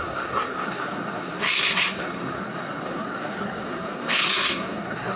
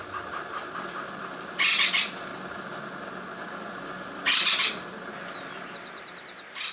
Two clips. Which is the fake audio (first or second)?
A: first